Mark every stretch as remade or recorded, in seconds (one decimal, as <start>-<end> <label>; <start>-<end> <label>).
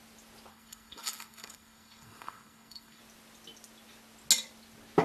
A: 0.0-0.5 recorded; 0.5-3.0 remade; 3.0-5.0 recorded